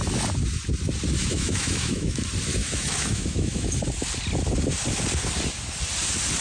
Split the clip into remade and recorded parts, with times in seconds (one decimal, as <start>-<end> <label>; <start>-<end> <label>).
0.0-1.2 recorded; 1.2-2.2 remade; 2.2-2.6 recorded; 2.6-3.8 remade; 3.8-6.4 recorded